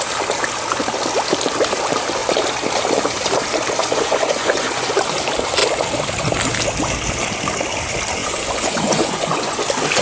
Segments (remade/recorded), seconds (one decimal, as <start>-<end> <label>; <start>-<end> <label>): 0.0-3.8 recorded; 3.8-4.9 remade; 4.9-8.2 recorded; 8.2-9.6 remade; 9.6-10.0 recorded

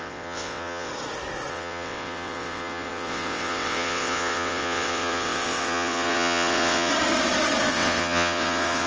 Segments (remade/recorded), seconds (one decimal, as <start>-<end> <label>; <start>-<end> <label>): 0.0-0.9 remade; 0.9-1.5 recorded; 1.5-6.9 remade; 6.9-7.7 recorded; 7.7-8.9 remade

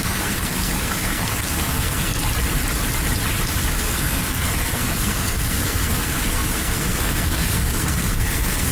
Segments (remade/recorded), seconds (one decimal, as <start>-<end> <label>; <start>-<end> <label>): 0.0-2.2 remade; 2.2-3.7 recorded; 3.7-8.7 remade